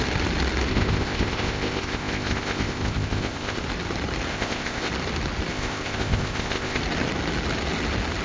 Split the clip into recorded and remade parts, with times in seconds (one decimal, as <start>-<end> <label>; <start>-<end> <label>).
0.0-0.7 recorded; 0.7-3.6 remade; 3.6-4.3 recorded; 4.3-4.9 remade; 4.9-5.5 recorded; 5.5-6.8 remade; 6.8-8.2 recorded